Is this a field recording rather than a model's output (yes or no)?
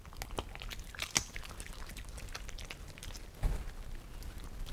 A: yes